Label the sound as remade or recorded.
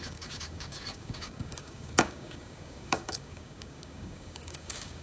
remade